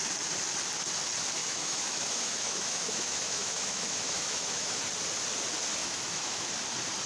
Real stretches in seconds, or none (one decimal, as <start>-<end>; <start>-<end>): 0.0-1.4; 4.8-5.8; 6.5-7.1